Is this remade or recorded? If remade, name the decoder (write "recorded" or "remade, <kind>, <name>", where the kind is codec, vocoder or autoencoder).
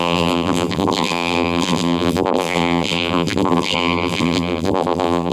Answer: remade, vocoder, BigVGAN v2